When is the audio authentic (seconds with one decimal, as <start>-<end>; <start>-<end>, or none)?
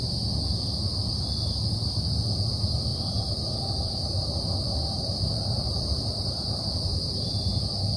0.0-2.9; 7.6-8.0